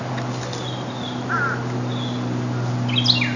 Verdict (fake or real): real